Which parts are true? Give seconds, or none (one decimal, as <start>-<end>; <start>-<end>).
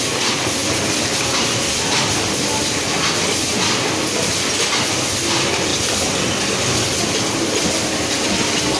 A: 0.0-8.8